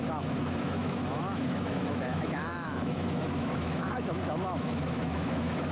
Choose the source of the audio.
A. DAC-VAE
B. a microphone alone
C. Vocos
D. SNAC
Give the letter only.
A